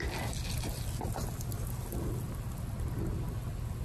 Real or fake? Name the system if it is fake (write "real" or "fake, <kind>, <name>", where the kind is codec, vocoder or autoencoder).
real